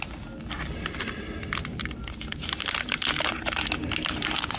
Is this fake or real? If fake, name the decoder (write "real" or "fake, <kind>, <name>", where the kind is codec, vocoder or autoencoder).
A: real